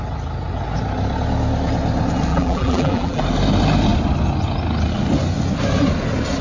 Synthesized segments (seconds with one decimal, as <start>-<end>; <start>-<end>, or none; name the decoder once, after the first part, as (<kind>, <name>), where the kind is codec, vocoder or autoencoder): 2.3-3.2 (vocoder, BigVGAN v2)